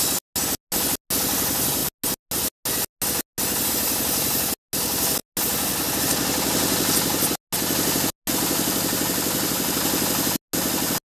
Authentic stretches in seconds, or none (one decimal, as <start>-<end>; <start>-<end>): 0.0-11.1